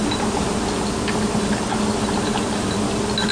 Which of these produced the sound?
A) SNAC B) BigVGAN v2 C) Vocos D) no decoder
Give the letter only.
D